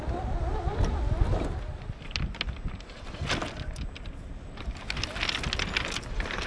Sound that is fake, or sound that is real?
real